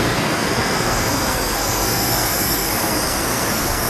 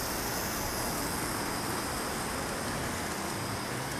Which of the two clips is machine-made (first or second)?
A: first